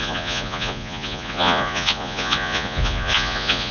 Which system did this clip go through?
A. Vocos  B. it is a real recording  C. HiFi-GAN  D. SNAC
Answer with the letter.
A